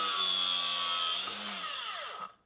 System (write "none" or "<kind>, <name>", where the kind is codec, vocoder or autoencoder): none